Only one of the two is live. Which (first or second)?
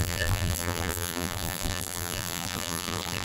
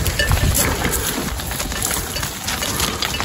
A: second